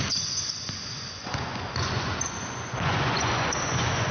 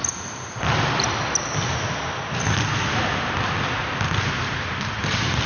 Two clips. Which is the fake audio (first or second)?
first